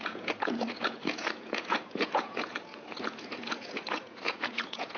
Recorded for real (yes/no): no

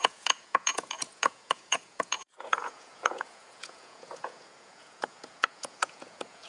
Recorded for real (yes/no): no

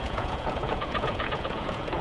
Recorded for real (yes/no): no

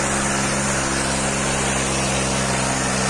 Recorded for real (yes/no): yes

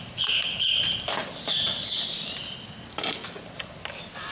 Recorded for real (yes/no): yes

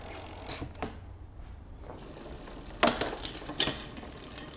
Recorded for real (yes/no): yes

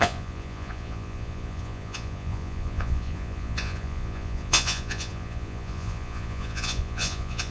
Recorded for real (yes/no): no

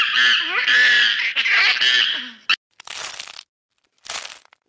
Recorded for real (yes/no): yes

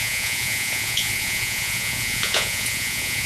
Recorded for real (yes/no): no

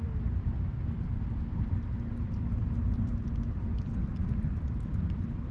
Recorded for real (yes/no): yes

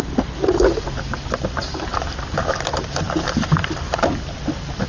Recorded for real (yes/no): yes